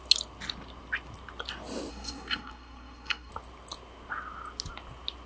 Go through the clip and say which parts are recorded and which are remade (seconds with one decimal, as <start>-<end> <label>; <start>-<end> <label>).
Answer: 0.0-1.9 recorded; 1.9-3.3 remade; 3.3-5.3 recorded